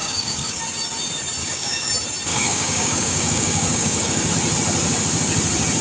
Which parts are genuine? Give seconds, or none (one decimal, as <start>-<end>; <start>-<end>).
0.6-1.4; 1.9-2.3; 4.3-5.8